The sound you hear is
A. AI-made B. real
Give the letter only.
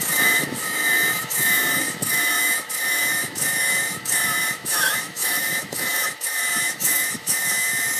A